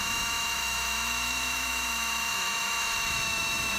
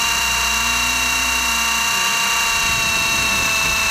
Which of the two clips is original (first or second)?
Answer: second